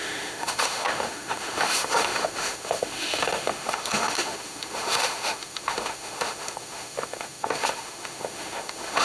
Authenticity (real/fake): fake